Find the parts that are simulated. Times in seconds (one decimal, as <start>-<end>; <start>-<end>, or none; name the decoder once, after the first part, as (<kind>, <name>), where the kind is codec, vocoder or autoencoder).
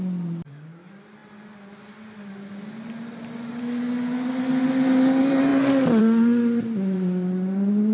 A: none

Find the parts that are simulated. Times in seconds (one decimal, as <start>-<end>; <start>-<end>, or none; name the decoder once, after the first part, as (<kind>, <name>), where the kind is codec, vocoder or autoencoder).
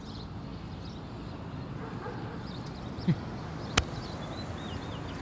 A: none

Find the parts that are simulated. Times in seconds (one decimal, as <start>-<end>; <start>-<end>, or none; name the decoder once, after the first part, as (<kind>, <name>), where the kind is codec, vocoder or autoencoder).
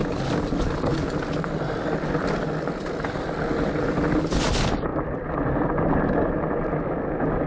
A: none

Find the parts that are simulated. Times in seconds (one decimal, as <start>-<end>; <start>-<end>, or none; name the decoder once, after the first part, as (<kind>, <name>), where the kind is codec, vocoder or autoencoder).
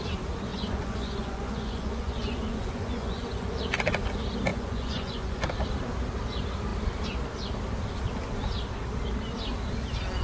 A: 0.5-3.6 (vocoder, Vocos); 4.5-5.5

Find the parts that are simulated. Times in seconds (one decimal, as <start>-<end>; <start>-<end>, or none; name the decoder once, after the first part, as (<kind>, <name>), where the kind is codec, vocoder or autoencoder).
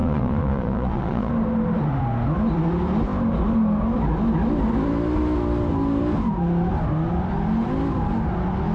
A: 0.0-1.3 (vocoder, Vocos)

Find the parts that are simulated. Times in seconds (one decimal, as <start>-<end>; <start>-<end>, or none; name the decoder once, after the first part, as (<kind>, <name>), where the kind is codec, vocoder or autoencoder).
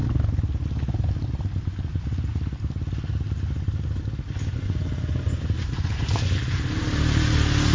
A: 4.5-6.1 (vocoder, Vocos)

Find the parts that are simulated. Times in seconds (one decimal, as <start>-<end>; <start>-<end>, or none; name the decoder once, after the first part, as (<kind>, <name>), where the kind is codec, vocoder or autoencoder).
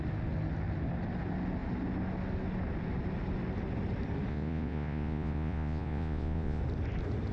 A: 4.3-6.6 (vocoder, Vocos)